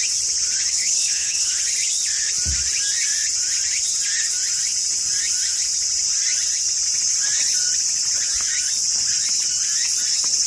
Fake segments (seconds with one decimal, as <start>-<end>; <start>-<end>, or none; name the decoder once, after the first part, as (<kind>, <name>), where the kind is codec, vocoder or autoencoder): 0.7-1.5 (codec, HILCodec)